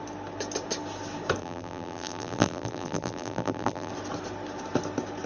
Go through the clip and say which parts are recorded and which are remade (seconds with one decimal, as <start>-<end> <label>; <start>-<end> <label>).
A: 0.0-1.4 recorded; 1.4-3.9 remade; 3.9-5.3 recorded